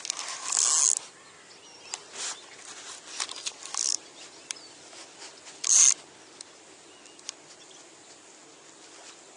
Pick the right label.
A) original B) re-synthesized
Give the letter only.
A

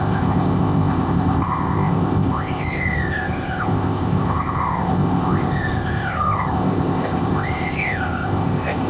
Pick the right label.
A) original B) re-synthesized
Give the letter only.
B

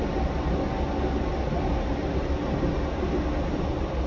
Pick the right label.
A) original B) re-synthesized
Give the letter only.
A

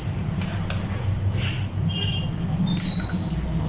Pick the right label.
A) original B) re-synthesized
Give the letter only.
A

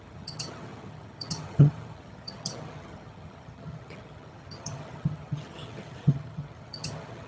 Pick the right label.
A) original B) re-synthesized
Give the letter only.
B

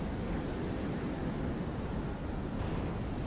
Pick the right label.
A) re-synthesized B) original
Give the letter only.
B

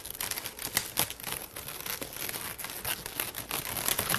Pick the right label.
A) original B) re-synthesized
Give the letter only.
A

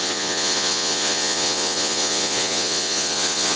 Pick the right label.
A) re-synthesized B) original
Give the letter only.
A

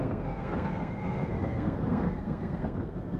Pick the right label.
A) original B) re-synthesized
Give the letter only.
B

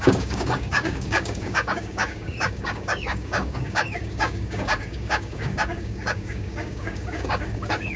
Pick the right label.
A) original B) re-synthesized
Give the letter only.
B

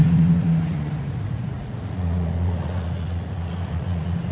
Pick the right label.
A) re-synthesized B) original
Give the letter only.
A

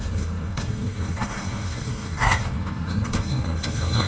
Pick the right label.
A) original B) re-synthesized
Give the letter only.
B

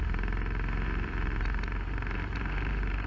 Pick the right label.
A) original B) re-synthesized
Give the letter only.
B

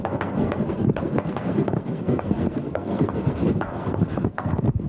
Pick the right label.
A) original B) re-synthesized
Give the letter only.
B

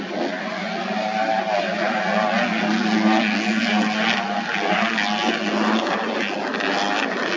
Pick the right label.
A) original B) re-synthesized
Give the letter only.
A